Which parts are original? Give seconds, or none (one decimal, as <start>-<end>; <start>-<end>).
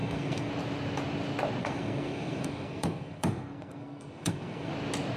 0.5-1.6; 4.7-5.2